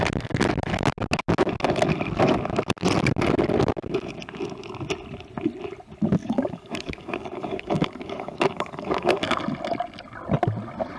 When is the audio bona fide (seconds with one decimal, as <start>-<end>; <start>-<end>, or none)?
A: 0.0-6.2; 9.4-11.0